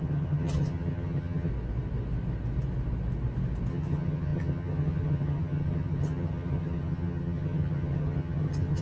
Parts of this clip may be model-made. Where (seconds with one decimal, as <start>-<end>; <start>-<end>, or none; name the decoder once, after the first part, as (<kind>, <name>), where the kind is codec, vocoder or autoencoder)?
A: 0.0-1.5 (vocoder, HiFi-GAN); 3.7-8.8